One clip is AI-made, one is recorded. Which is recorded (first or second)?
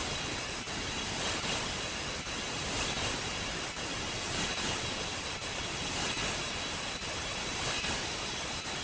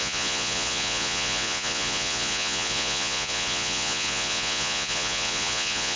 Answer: first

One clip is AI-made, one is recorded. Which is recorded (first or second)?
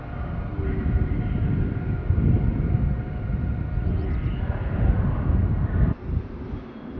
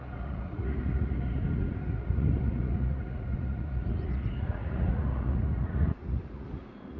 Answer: first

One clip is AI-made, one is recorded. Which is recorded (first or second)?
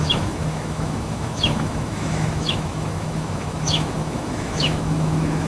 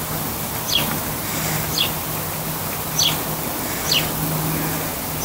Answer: second